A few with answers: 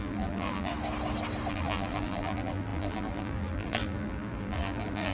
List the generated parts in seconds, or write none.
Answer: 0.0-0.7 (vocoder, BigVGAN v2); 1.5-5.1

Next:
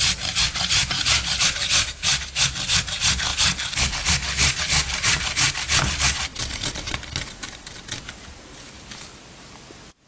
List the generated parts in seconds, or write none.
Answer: none

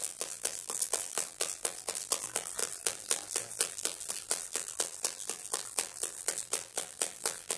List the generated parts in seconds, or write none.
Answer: 0.0-7.6 (vocoder, BigVGAN v2)

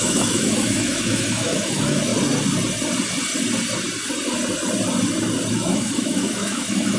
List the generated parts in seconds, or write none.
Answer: 0.0-2.1 (autoencoder, DAC-VAE); 5.5-7.0